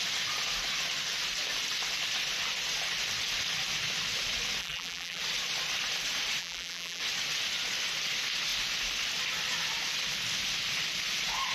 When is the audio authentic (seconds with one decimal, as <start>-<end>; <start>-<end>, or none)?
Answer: 0.0-4.6; 5.2-6.4; 7.0-11.5